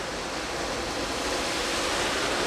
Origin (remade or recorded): recorded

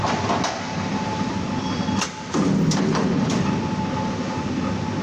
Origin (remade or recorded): recorded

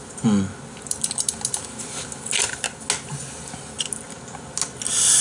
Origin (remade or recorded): recorded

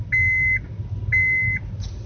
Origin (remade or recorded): recorded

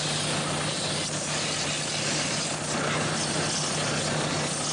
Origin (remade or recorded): recorded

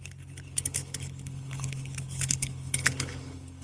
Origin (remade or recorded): remade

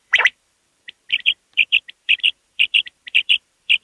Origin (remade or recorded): remade